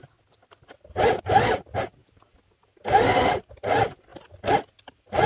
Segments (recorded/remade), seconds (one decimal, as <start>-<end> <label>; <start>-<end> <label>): 0.0-4.1 recorded; 4.1-5.3 remade